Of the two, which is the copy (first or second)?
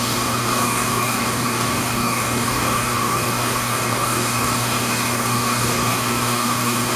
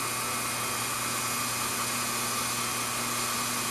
first